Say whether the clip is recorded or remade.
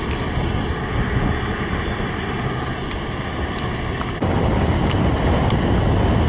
recorded